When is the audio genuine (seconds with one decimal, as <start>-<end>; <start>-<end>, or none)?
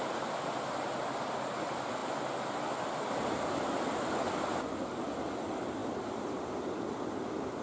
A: 0.0-7.6